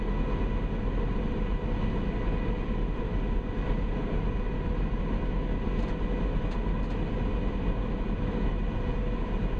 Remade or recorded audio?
recorded